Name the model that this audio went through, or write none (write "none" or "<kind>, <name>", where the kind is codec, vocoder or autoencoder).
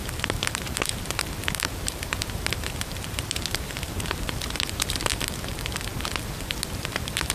vocoder, BigVGAN v2